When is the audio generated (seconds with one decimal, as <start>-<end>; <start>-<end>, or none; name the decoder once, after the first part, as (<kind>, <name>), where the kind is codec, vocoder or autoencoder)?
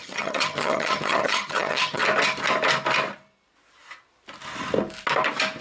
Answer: 0.0-2.0 (vocoder, HiFi-GAN)